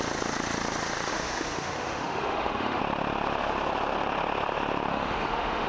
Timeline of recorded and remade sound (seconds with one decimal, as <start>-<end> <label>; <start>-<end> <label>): 0.0-1.1 recorded; 1.1-2.8 remade; 2.8-4.9 recorded; 4.9-5.7 remade